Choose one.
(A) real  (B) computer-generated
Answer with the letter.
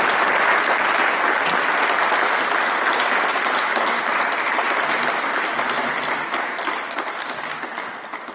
A